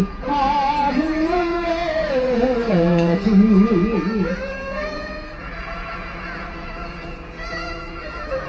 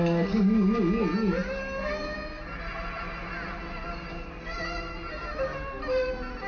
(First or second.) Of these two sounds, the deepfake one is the first